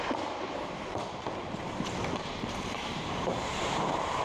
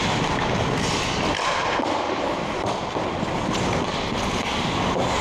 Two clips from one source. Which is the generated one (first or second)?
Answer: first